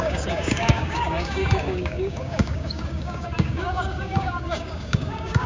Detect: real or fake fake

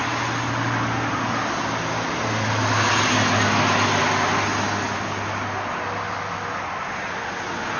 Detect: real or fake real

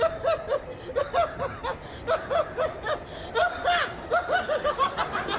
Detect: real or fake real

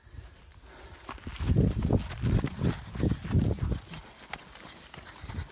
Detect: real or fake real